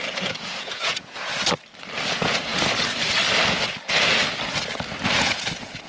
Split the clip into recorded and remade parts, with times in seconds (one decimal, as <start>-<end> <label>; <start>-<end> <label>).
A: 0.0-1.3 remade; 1.3-2.1 recorded; 2.1-2.5 remade; 2.5-5.0 recorded; 5.0-5.9 remade